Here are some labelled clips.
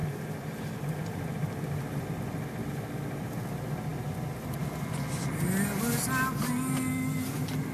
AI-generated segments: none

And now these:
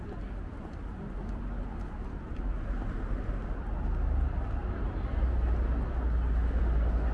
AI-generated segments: none

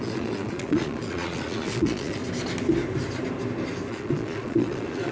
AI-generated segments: 0.0-2.2 (vocoder, Vocos); 3.9-5.1

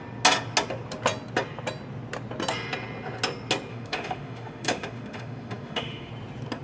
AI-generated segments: 3.7-6.1 (autoencoder, DAC-VAE)

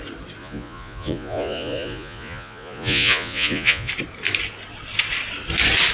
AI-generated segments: 0.4-3.9 (vocoder, Vocos)